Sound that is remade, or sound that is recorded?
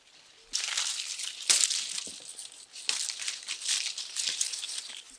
recorded